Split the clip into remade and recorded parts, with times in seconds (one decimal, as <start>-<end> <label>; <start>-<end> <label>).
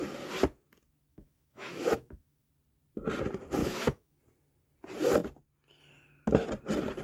0.0-1.1 recorded; 1.1-2.5 remade; 2.5-3.6 recorded; 3.6-4.2 remade; 4.2-7.0 recorded